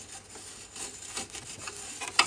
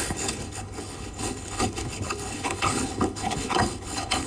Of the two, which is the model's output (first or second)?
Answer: second